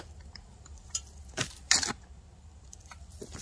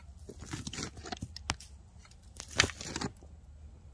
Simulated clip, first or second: first